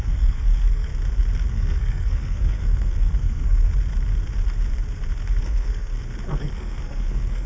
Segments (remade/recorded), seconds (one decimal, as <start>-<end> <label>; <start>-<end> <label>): 0.0-0.9 remade; 0.9-1.5 recorded; 1.5-3.7 remade; 3.7-5.4 recorded; 5.4-5.9 remade; 5.9-6.4 recorded; 6.4-7.5 remade